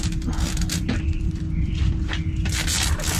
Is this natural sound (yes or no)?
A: no